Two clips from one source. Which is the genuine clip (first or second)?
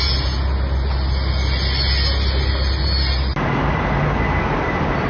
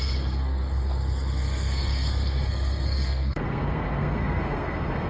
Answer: first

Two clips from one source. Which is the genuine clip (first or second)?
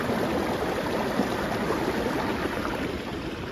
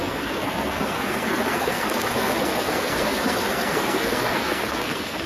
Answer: first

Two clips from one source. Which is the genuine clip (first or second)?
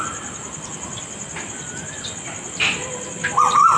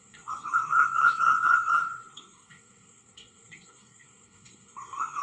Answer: first